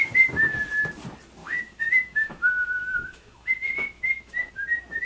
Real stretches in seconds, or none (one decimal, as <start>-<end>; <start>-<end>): 0.0-1.4; 4.5-5.1